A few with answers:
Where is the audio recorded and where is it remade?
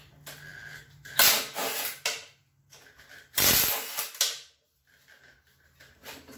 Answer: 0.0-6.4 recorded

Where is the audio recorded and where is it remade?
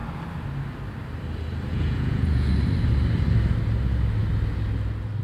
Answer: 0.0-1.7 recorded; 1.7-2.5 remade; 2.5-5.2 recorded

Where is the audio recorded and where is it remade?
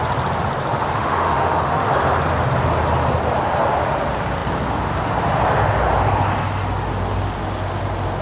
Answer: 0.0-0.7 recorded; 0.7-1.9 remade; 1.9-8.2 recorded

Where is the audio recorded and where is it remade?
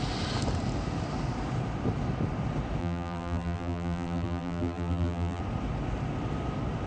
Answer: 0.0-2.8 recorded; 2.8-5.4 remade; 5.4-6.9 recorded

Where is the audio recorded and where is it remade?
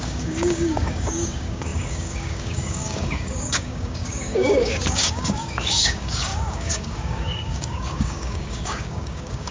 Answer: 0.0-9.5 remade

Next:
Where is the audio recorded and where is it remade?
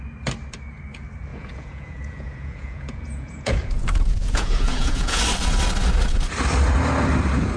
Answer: 0.0-1.3 recorded; 1.3-5.2 remade; 5.2-7.6 recorded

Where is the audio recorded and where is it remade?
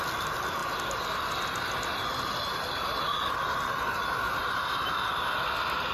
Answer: 0.0-5.9 recorded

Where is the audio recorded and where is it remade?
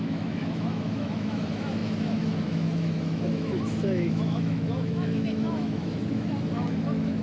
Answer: 0.0-7.2 remade